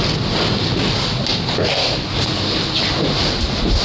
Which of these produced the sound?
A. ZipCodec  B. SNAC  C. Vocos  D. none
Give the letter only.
D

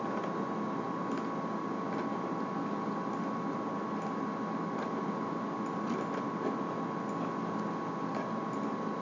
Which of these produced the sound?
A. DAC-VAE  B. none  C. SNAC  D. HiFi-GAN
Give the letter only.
B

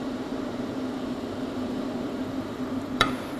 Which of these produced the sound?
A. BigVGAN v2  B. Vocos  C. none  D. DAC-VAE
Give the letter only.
A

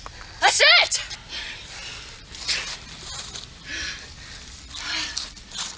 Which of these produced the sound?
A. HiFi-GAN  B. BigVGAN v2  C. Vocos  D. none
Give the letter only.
D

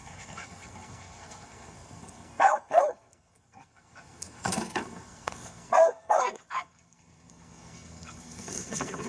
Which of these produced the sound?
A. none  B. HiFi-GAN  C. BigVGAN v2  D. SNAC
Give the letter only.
D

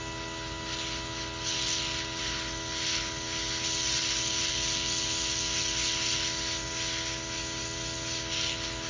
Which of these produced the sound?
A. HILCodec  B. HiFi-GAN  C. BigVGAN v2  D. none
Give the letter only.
D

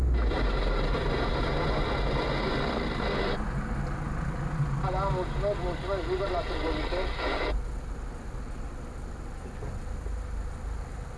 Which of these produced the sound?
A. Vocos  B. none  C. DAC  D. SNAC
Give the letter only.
B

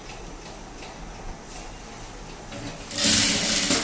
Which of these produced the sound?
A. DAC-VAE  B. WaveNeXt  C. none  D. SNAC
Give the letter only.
C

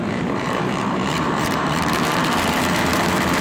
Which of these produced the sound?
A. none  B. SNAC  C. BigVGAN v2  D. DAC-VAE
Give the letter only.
C